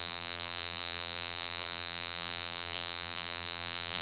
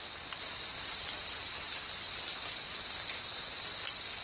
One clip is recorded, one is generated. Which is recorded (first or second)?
second